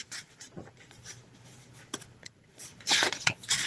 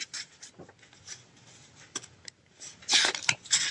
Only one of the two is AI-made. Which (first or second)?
first